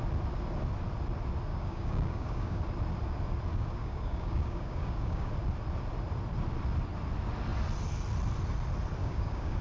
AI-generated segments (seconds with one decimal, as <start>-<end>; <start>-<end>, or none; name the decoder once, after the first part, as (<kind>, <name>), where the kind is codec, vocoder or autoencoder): 1.5-2.6 (codec, DAC); 3.5-5.3; 9.0-9.6